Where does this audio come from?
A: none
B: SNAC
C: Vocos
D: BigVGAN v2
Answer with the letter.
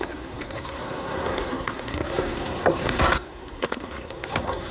B